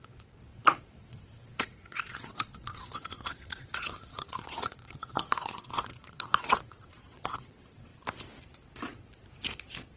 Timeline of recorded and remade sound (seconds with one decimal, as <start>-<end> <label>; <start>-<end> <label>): 0.0-7.9 remade; 7.9-10.0 recorded